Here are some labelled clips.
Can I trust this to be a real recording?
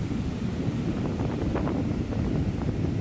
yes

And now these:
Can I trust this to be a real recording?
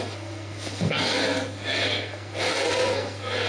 no